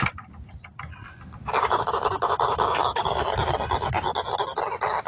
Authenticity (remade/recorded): recorded